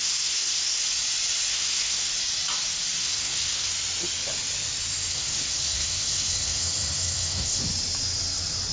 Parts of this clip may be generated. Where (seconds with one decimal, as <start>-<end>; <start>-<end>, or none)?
0.0-0.8; 1.5-2.1; 3.0-3.7; 5.1-7.6

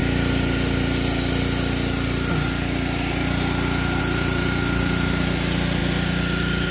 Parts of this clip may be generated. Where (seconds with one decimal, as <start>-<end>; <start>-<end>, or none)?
none

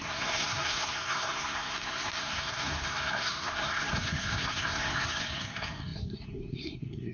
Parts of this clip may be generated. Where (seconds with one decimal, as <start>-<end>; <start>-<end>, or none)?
0.0-7.1

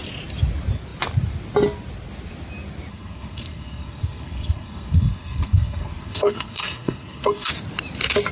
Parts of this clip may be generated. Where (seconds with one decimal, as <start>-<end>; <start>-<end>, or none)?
2.9-7.5

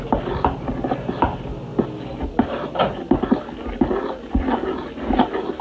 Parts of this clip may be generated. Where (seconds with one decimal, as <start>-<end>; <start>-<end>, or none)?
none

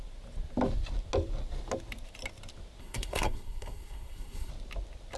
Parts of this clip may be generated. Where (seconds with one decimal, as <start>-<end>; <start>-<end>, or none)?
2.8-4.5

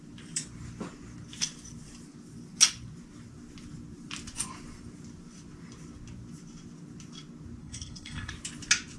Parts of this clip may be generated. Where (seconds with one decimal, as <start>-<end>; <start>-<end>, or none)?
7.6-8.3